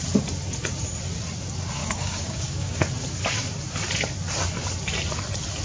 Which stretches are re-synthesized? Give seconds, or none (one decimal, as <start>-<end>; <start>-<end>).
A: 1.8-2.8